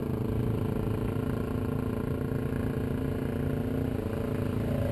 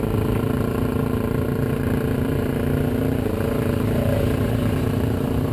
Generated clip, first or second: second